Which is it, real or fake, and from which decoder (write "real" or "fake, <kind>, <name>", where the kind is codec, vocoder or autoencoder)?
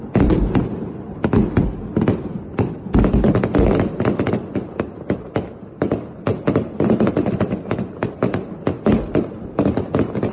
real